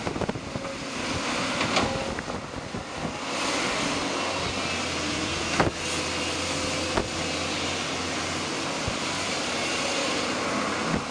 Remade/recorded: recorded